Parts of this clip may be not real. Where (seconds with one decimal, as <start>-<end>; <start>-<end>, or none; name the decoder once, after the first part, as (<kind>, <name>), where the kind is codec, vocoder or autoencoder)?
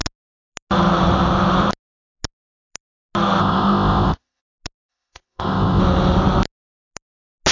3.4-4.4 (codec, ZipCodec); 4.9-5.8